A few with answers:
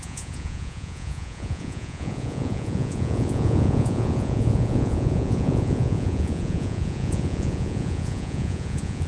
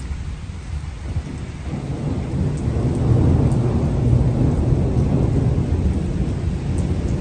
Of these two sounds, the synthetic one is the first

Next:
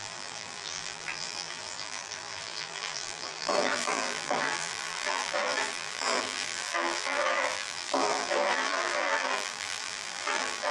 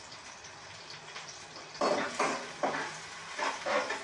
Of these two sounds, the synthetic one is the first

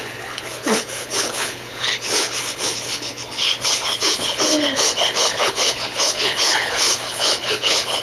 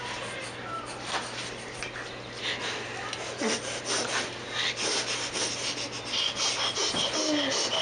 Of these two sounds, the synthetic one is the first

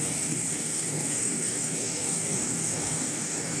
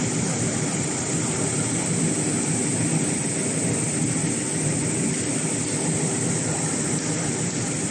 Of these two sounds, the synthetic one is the first